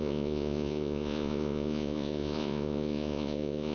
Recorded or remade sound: remade